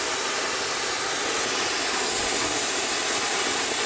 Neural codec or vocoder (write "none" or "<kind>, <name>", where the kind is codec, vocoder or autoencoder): none